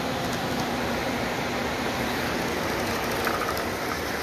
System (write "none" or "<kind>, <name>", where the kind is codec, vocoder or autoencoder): none